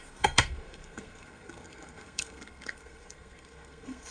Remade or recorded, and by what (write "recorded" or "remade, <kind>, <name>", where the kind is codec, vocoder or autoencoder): remade, codec, SNAC